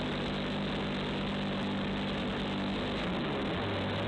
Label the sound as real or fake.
real